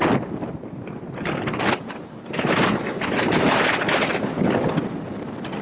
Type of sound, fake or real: real